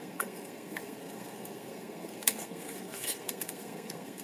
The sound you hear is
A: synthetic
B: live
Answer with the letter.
A